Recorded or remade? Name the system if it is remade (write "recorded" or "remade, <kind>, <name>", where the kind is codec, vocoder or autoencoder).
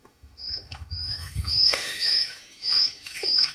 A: remade, autoencoder, DAC-VAE